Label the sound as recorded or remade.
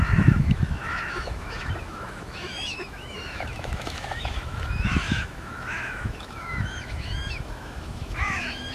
remade